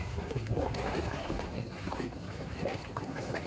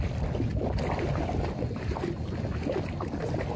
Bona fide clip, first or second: second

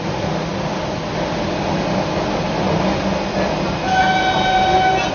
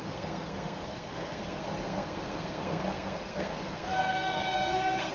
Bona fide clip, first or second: first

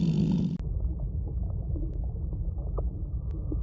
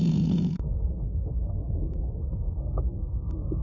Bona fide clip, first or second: first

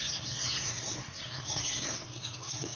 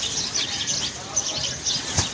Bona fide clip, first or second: second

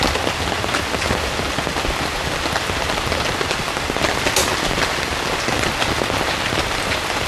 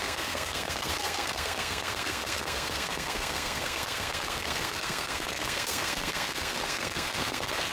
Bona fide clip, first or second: first